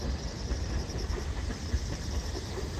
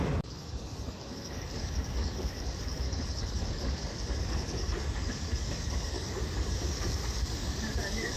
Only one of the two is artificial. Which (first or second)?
second